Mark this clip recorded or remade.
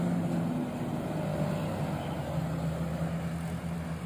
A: recorded